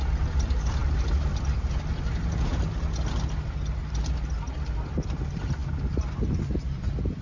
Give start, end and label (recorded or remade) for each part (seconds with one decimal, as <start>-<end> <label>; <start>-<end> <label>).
0.0-7.2 recorded